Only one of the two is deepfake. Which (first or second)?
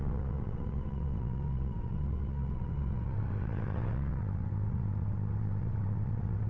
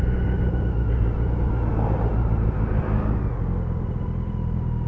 first